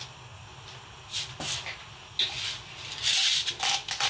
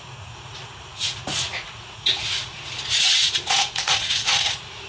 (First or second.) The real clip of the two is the first